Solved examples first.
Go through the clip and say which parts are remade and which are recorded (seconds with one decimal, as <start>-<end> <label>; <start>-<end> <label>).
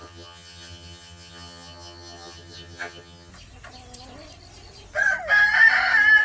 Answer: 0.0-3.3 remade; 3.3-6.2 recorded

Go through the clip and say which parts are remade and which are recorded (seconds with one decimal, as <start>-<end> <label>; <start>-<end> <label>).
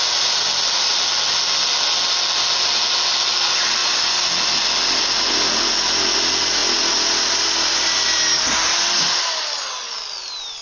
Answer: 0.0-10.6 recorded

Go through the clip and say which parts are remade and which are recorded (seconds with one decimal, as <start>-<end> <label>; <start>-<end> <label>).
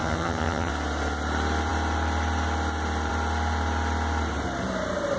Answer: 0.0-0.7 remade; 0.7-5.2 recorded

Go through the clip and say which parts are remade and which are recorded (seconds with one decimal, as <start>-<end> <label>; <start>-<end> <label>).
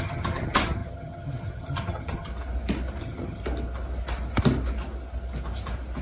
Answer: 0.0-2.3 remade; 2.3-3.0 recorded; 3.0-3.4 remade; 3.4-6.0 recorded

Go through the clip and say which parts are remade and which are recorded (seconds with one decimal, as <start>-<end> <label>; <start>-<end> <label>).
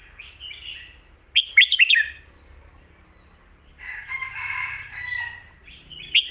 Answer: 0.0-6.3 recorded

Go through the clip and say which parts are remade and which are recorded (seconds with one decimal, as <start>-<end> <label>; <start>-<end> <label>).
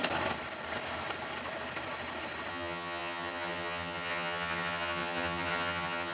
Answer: 0.0-2.5 recorded; 2.5-6.1 remade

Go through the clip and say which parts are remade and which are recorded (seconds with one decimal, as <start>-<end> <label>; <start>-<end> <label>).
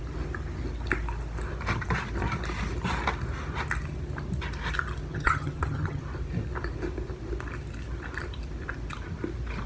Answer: 0.0-5.1 recorded; 5.1-6.0 remade; 6.0-9.7 recorded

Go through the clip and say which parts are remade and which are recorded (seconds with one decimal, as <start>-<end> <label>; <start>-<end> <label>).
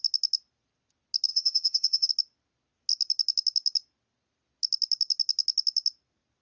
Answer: 0.0-1.3 recorded; 1.3-2.1 remade; 2.1-6.4 recorded